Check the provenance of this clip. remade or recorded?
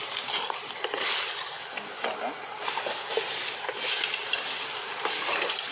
recorded